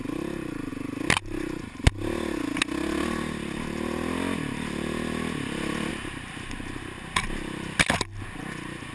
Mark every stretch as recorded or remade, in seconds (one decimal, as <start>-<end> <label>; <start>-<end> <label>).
0.0-8.9 recorded